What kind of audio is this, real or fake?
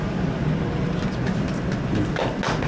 real